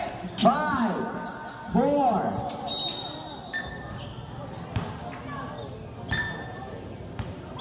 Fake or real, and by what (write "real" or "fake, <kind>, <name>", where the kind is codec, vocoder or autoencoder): real